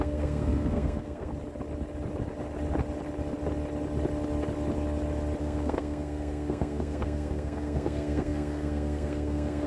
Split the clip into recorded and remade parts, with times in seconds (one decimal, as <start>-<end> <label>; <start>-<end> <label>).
0.0-1.3 remade; 1.3-5.4 recorded; 5.4-9.7 remade

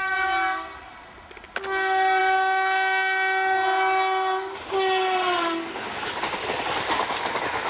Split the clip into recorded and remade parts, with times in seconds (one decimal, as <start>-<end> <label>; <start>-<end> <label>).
0.0-7.7 recorded

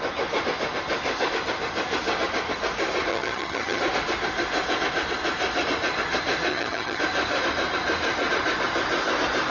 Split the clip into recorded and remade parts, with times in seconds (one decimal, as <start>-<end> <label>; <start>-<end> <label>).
0.0-3.1 recorded; 3.1-3.8 remade; 3.8-6.5 recorded; 6.5-7.0 remade; 7.0-9.5 recorded

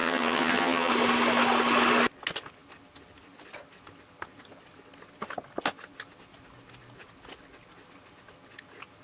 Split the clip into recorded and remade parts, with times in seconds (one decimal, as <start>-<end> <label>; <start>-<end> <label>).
0.0-0.9 remade; 0.9-9.0 recorded

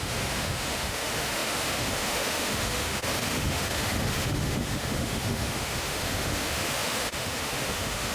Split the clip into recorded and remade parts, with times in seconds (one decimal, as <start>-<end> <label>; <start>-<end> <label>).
0.0-8.1 remade